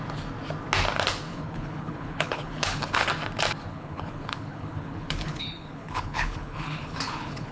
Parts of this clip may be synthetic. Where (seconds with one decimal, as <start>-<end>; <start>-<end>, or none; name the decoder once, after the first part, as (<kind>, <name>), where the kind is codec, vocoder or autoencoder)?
1.3-3.1 (codec, HILCodec); 3.7-7.5